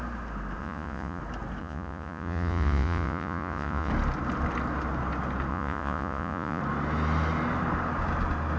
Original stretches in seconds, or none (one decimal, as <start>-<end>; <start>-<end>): 0.0-0.6; 1.2-1.6; 3.9-5.5; 6.6-8.6